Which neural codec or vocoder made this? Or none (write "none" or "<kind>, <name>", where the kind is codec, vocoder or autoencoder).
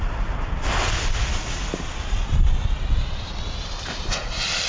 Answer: none